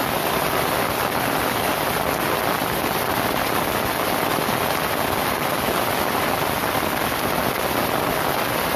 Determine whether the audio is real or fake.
real